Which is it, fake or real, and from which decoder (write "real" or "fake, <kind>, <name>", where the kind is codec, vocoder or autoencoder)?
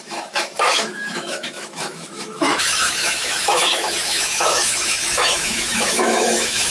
fake, autoencoder, DAC-VAE